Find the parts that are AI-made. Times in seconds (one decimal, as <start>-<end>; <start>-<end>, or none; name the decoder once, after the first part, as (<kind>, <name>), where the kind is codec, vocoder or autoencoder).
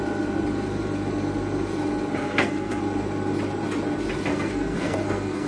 2.2-2.8 (codec, SNAC); 4.3-5.5